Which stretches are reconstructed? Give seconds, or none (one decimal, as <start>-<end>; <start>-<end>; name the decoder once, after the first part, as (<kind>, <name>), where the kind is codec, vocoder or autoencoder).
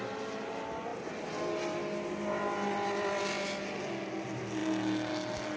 none